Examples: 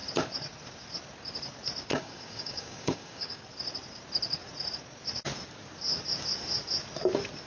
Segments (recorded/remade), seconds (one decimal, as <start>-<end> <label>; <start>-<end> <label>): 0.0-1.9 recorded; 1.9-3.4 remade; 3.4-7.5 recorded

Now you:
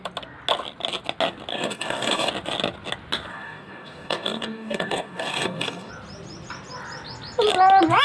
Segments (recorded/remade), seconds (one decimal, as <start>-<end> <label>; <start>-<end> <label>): 0.0-1.5 recorded; 1.5-2.3 remade; 2.3-3.3 recorded; 3.3-5.9 remade; 5.9-8.0 recorded

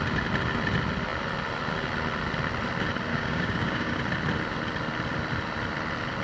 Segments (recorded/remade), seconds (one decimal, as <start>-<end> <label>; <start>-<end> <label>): 0.0-3.1 recorded; 3.1-4.0 remade; 4.0-6.2 recorded

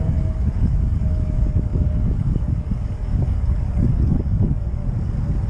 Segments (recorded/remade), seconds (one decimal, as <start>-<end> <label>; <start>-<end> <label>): 0.0-4.8 remade; 4.8-5.5 recorded

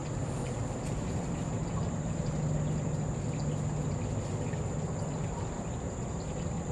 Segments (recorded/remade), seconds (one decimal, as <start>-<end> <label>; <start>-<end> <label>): 0.0-6.7 recorded

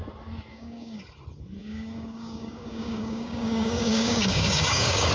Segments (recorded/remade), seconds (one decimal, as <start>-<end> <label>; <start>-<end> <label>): 0.0-0.5 recorded; 0.5-1.0 remade; 1.0-1.6 recorded; 1.6-5.1 remade

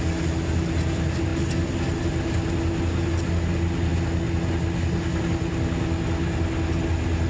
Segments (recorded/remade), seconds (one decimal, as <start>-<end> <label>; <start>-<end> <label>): 0.0-7.3 recorded

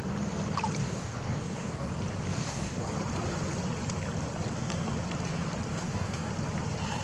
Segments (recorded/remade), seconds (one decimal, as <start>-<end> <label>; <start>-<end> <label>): 0.0-0.8 recorded; 0.8-1.9 remade; 1.9-2.3 recorded; 2.3-2.9 remade; 2.9-5.7 recorded; 5.7-6.3 remade; 6.3-7.0 recorded